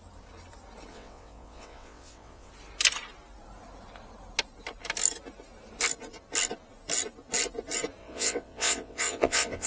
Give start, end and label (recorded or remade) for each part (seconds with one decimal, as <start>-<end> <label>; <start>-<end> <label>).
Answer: 0.0-0.9 recorded; 0.9-2.5 remade; 2.5-8.0 recorded; 8.0-9.7 remade